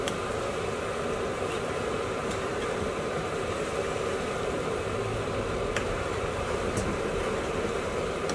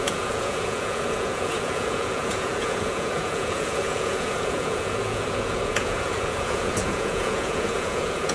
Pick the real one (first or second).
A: first